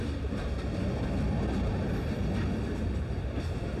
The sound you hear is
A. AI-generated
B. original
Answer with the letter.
B